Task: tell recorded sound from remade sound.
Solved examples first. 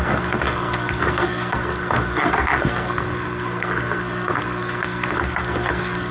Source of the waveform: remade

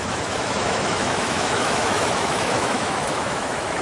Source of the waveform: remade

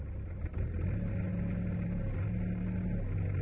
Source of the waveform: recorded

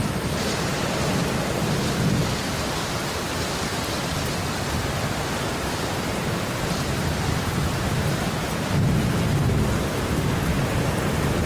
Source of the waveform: remade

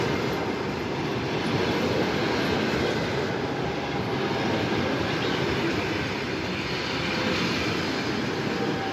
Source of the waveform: recorded